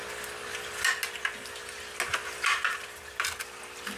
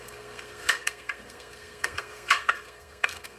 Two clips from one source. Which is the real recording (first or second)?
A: first